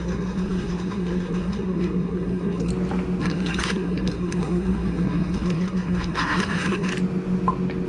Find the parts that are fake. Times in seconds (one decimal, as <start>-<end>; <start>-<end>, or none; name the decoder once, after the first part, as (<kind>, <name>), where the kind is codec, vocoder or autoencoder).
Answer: 0.0-2.7 (codec, SNAC); 3.2-6.9